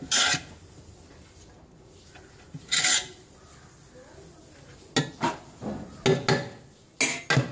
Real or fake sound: real